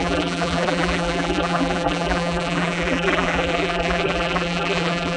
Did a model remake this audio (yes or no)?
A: yes